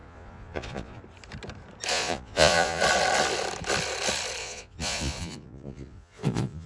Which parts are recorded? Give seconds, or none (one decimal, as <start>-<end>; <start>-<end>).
1.0-1.9; 2.8-4.4